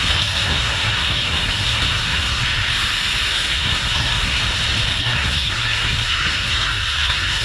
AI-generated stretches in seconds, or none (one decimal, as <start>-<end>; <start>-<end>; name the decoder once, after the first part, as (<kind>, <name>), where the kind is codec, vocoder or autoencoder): 0.0-2.4 (codec, SNAC); 3.3-4.4; 5.0-7.4